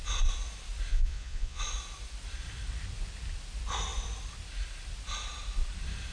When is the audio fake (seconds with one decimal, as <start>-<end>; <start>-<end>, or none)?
0.9-1.6